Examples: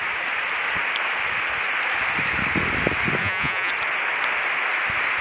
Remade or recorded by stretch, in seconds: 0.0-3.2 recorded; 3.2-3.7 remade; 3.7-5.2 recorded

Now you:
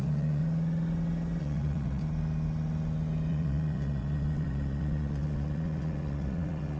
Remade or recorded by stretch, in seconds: 0.0-0.4 remade; 0.4-1.4 recorded; 1.4-2.0 remade; 2.0-3.3 recorded; 3.3-6.8 remade

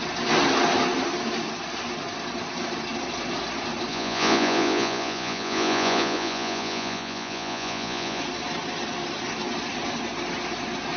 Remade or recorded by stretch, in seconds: 0.0-3.9 recorded; 3.9-8.2 remade; 8.2-11.0 recorded

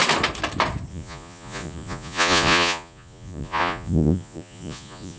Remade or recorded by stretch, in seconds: 0.0-0.9 recorded; 0.9-5.2 remade

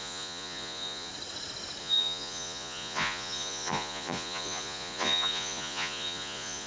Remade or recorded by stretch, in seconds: 0.0-1.1 remade; 1.1-1.8 recorded; 1.8-6.7 remade

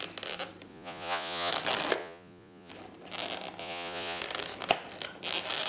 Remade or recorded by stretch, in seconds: 0.0-0.7 recorded; 0.7-1.5 remade; 1.5-2.0 recorded; 2.0-2.7 remade; 2.7-3.6 recorded; 3.6-4.2 remade; 4.2-5.7 recorded